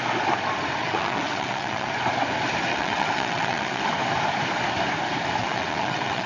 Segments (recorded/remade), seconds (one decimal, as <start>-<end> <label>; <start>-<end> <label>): 0.0-0.8 recorded; 0.8-1.9 remade; 1.9-2.7 recorded; 2.7-3.8 remade; 3.8-5.4 recorded; 5.4-6.3 remade